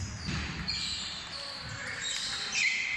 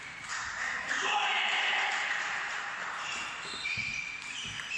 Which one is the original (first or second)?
first